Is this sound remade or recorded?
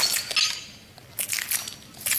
recorded